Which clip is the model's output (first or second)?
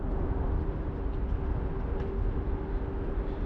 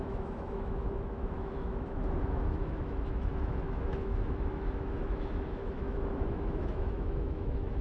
second